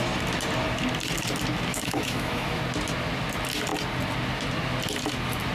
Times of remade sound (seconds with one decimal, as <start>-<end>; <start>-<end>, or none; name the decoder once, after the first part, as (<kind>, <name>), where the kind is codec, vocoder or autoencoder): 1.7-2.6 (autoencoder, DAC-VAE)